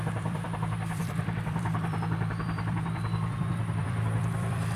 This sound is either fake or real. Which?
fake